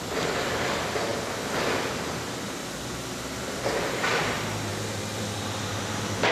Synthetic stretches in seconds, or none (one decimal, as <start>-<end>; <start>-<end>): none